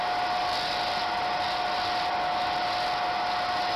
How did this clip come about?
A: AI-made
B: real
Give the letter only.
B